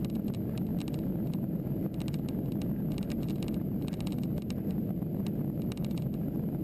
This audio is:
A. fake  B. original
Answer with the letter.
B